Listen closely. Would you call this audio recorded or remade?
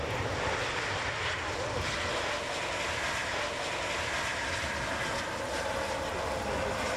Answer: recorded